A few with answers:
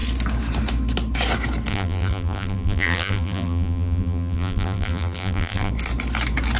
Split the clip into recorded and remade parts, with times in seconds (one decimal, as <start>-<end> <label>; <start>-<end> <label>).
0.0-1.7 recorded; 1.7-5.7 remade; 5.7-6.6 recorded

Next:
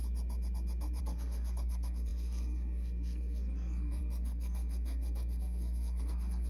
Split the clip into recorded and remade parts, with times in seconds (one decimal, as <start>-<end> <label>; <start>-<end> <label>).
0.0-1.0 recorded; 1.0-6.5 remade

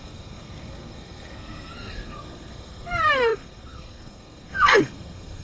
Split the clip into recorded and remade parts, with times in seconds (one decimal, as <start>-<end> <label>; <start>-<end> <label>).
0.0-5.4 remade

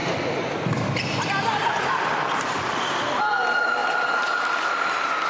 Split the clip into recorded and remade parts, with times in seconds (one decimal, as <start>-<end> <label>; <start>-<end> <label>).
0.0-5.3 recorded

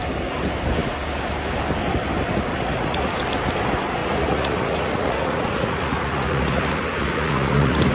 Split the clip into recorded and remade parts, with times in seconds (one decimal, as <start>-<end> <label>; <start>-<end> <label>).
0.0-2.5 recorded; 2.5-3.1 remade; 3.1-4.0 recorded; 4.0-7.9 remade